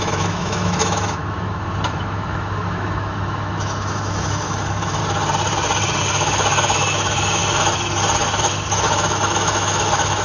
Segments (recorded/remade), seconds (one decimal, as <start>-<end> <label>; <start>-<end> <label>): 0.0-5.0 remade; 5.0-6.1 recorded; 6.1-7.4 remade; 7.4-8.4 recorded; 8.4-10.2 remade